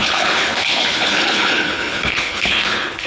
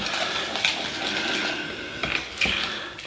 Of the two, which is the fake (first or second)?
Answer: first